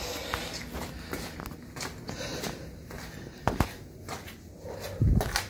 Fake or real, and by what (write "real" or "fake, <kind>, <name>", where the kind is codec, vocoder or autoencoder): real